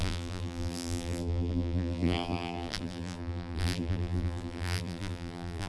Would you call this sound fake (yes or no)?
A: yes